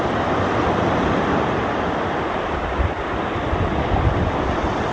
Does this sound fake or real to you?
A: real